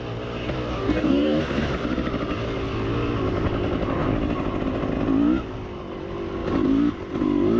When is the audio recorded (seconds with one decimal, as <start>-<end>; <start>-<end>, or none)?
0.0-0.7; 1.4-7.6